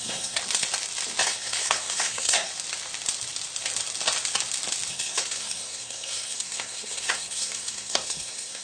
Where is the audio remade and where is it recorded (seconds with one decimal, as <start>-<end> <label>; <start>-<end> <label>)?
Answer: 0.0-0.4 remade; 0.4-1.3 recorded; 1.3-2.5 remade; 2.5-4.9 recorded; 4.9-8.6 remade